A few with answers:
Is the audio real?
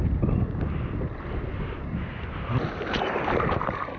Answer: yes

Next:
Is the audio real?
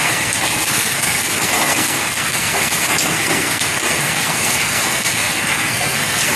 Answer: no